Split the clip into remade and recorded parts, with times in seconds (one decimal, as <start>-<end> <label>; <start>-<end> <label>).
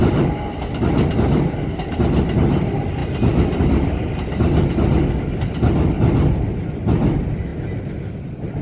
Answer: 0.0-3.0 recorded; 3.0-3.6 remade; 3.6-8.6 recorded